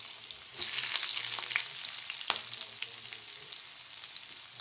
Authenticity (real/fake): real